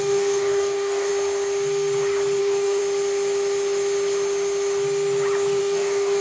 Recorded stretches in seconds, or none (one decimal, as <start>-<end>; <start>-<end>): 1.1-2.4; 2.8-5.6